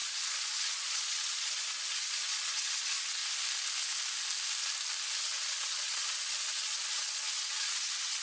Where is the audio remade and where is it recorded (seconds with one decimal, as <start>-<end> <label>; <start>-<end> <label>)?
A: 0.0-3.2 remade; 3.2-5.2 recorded; 5.2-8.2 remade